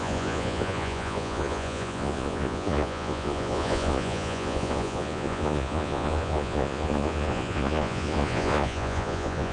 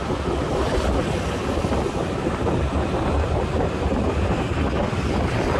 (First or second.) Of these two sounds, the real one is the second